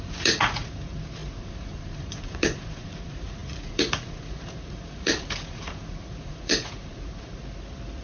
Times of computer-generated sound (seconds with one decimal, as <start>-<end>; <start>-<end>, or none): 0.0-7.4